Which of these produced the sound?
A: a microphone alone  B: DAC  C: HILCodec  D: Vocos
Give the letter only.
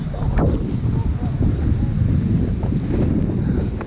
A